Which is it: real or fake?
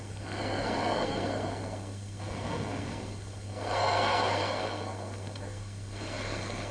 fake